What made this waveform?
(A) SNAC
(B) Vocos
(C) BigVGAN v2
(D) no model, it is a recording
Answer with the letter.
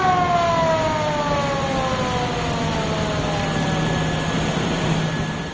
D